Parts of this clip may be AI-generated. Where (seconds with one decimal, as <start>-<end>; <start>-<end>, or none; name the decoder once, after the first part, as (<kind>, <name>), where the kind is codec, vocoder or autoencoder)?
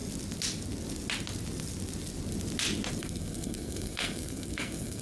3.0-5.0 (codec, SNAC)